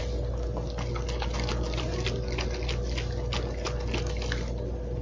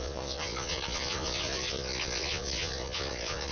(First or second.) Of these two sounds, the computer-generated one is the second